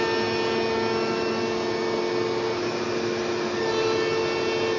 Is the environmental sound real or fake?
real